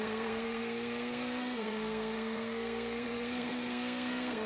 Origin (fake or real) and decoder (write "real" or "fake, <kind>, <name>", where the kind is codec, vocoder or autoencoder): fake, codec, SNAC